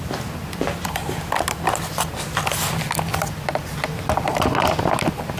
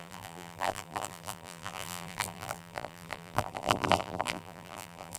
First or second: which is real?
first